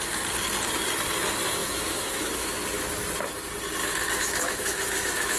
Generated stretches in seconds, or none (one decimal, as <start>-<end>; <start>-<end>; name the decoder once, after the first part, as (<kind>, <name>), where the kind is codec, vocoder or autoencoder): 1.6-2.5 (autoencoder, DAC-VAE); 3.8-5.4

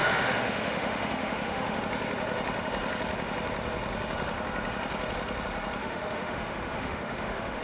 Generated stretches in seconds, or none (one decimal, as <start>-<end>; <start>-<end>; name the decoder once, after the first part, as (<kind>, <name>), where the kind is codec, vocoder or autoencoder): 0.0-1.8 (autoencoder, DAC-VAE); 5.8-7.6

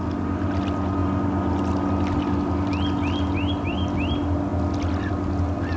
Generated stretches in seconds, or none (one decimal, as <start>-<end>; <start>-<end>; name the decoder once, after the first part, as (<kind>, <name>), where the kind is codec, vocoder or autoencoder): none

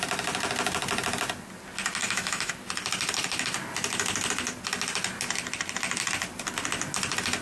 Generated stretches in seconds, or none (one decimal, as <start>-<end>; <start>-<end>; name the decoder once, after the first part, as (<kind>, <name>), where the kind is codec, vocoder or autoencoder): 2.0-2.5 (autoencoder, DAC-VAE)

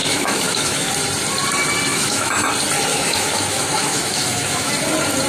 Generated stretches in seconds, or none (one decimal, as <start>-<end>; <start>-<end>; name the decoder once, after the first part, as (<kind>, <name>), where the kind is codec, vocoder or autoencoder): 0.0-0.9 (autoencoder, DAC-VAE); 1.9-2.5; 2.9-4.7

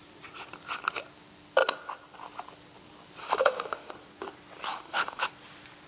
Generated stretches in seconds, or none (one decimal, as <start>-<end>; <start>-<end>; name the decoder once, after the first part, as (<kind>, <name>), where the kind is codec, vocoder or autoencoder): 3.2-3.9 (autoencoder, DAC-VAE); 4.7-5.3